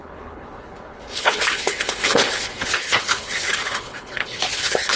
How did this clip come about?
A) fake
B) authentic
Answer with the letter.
A